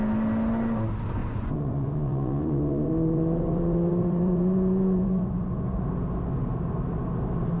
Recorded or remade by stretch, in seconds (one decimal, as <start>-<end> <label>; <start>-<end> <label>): 0.0-1.2 recorded; 1.2-5.8 remade; 5.8-7.6 recorded